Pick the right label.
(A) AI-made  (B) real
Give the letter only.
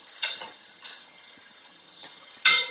A